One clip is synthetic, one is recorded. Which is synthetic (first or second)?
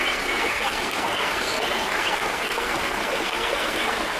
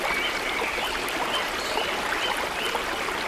first